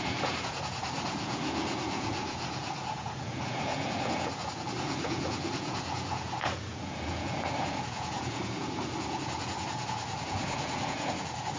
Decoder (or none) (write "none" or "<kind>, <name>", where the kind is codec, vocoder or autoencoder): vocoder, Vocos